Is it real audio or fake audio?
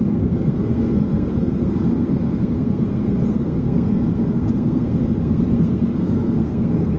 fake